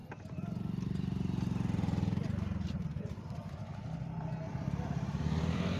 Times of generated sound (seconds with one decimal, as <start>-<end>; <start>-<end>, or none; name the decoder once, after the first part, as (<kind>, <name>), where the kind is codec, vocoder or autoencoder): 3.4-5.2 (vocoder, BigVGAN v2)